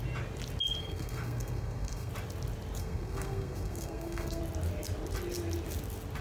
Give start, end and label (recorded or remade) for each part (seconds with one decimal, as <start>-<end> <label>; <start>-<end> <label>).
0.0-0.8 recorded; 0.8-2.1 remade; 2.1-2.8 recorded; 2.8-4.4 remade; 4.4-6.2 recorded